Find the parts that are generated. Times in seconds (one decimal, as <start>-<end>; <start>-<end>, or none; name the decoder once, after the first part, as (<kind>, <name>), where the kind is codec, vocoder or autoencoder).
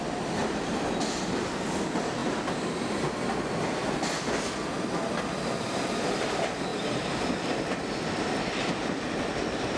0.4-0.9 (vocoder, BigVGAN v2); 6.7-8.4